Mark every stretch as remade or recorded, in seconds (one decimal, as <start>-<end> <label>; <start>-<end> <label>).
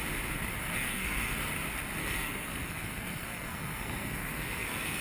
0.0-0.5 recorded; 0.5-1.5 remade; 1.5-2.0 recorded; 2.0-5.0 remade